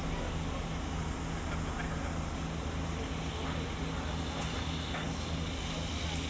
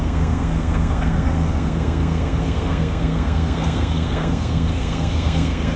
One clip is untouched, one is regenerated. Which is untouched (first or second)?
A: first